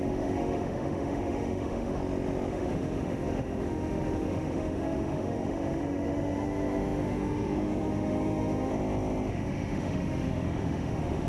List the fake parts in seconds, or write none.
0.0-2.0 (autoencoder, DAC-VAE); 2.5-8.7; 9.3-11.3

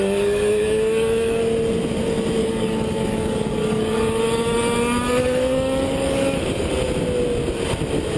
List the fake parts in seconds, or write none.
0.0-1.4 (codec, DAC); 2.4-6.7